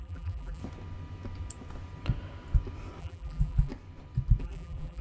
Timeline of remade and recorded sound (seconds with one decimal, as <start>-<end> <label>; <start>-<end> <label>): 0.0-0.6 remade; 0.6-3.0 recorded; 3.0-3.7 remade; 3.7-4.4 recorded; 4.4-5.0 remade